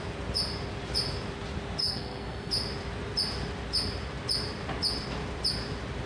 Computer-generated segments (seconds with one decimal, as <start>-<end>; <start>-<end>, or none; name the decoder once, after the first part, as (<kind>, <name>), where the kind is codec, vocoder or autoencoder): 1.8-2.5 (codec, SNAC)